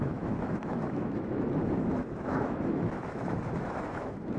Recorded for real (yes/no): no